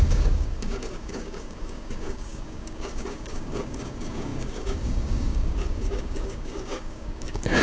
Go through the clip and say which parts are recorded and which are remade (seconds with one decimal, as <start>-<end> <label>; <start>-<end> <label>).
0.0-7.6 remade